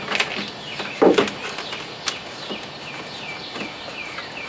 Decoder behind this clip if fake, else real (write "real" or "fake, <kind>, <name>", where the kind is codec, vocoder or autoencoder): real